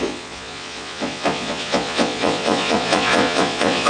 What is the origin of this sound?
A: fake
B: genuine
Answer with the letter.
A